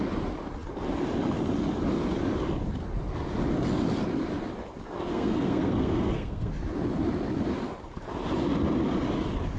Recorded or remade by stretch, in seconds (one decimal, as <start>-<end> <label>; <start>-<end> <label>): 0.0-5.1 recorded; 5.1-6.5 remade; 6.5-9.6 recorded